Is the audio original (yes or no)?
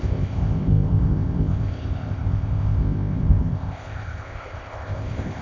no